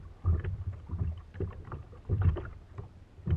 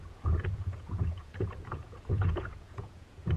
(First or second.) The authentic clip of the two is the first